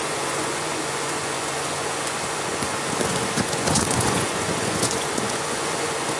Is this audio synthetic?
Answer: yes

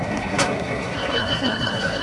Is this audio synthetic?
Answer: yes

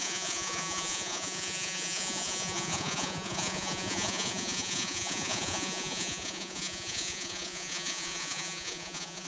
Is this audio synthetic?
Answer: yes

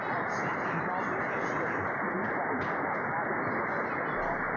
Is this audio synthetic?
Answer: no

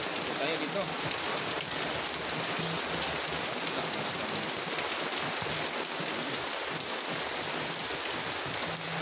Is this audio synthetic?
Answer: no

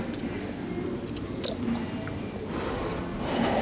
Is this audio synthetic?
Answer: no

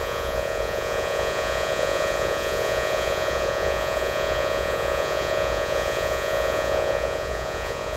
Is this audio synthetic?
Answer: yes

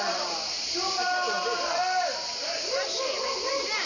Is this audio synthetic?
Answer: yes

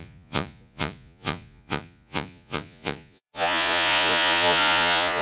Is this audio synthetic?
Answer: yes